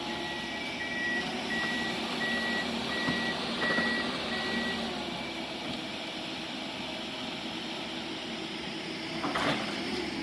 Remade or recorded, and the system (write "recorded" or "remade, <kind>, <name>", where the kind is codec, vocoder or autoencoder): recorded